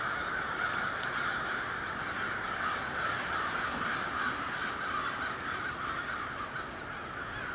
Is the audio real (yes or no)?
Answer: yes